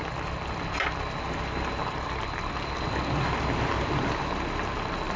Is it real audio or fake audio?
real